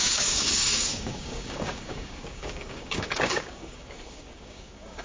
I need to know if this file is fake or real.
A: fake